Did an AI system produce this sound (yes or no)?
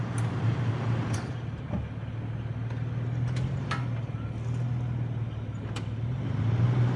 no